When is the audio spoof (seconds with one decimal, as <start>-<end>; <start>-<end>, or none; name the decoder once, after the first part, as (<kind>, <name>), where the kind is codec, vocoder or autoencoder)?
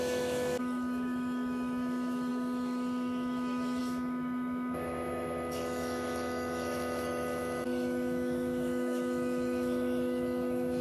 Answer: 0.0-10.8 (autoencoder, DAC-VAE)